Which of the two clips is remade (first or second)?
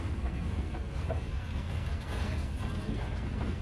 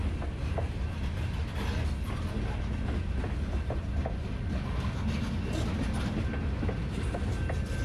first